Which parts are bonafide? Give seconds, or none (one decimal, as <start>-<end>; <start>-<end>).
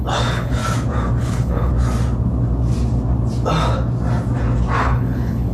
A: 0.6-1.2; 1.7-4.8